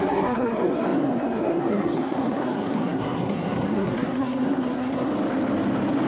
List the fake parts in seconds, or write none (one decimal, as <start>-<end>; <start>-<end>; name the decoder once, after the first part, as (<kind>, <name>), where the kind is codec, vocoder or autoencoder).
0.0-5.1 (codec, SNAC)